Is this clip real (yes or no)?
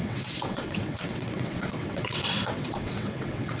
no